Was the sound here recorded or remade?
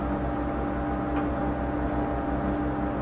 recorded